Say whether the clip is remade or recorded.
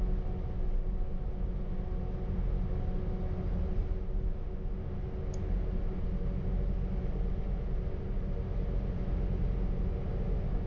recorded